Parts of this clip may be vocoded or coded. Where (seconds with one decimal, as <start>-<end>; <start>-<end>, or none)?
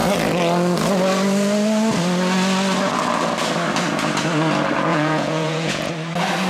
4.9-5.9